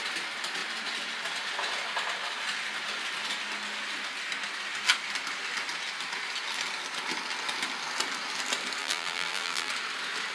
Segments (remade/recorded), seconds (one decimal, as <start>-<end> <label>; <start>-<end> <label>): 0.0-8.8 recorded; 8.8-9.7 remade; 9.7-10.3 recorded